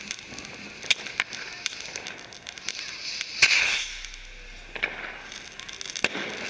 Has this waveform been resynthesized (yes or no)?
no